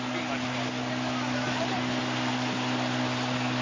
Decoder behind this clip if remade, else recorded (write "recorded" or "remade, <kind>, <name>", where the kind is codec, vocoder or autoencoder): recorded